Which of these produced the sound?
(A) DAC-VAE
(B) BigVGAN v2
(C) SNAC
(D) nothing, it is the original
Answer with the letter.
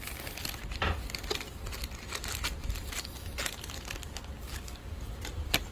D